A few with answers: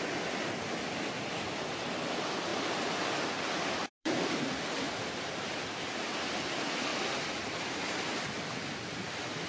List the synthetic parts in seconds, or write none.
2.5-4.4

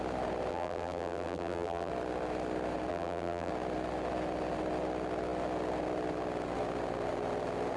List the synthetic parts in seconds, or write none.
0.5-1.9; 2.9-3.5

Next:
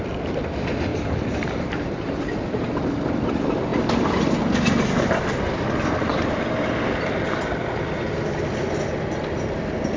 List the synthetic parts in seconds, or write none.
0.9-2.3; 6.1-7.2